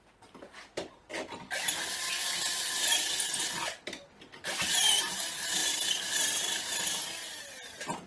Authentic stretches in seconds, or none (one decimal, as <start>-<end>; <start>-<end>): 0.0-8.1